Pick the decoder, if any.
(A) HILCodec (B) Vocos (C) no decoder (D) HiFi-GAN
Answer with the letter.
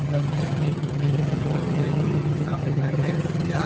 D